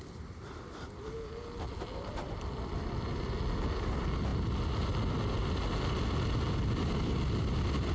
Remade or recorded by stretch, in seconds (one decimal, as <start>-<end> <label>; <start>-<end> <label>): 0.0-7.9 recorded